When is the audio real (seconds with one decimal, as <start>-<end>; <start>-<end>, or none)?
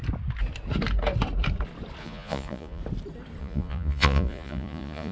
0.0-2.0; 2.8-3.4